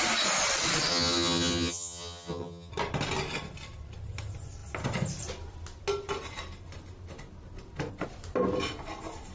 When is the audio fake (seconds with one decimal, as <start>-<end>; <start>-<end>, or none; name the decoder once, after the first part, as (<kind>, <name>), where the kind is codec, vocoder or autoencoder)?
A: 0.9-2.7 (vocoder, HiFi-GAN)